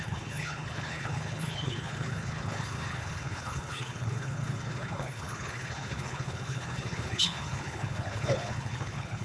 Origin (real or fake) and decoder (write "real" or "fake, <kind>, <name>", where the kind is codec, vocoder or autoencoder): fake, codec, HILCodec